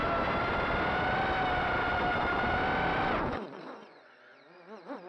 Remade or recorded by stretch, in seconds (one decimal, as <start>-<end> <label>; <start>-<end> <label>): 0.0-3.1 recorded; 3.1-5.1 remade